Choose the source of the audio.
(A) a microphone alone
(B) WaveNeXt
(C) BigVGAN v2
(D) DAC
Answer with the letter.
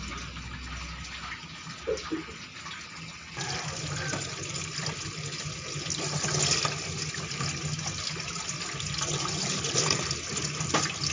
A